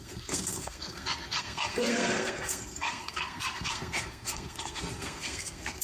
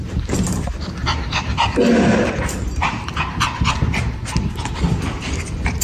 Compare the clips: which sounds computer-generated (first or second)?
first